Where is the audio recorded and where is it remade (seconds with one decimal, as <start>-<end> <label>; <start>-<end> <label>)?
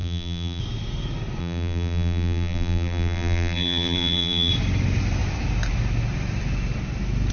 0.0-0.6 remade; 0.6-1.4 recorded; 1.4-4.5 remade; 4.5-7.3 recorded